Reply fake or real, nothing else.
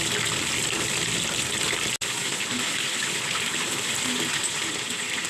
real